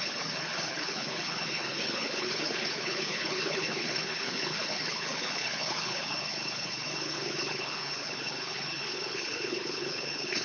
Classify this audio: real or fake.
fake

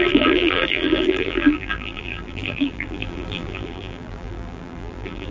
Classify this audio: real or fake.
fake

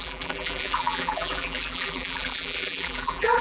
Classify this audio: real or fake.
fake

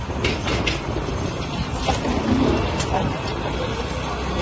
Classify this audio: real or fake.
real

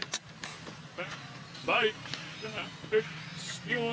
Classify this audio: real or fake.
real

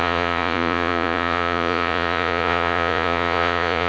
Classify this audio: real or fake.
fake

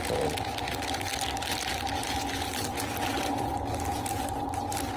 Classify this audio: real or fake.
real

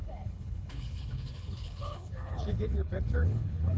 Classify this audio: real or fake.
fake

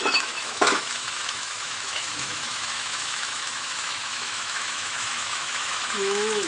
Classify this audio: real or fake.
fake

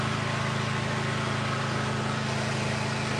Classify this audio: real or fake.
real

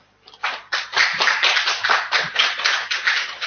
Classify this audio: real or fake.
real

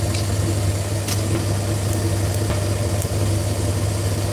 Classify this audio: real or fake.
real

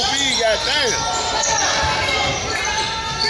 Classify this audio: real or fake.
real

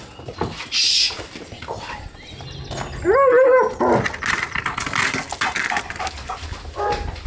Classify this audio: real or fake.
real